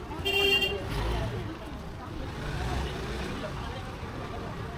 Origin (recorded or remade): recorded